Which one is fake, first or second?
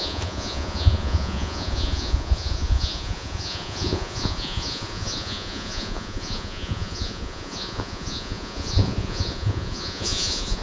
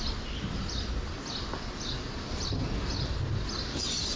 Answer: first